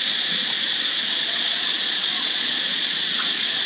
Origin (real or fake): fake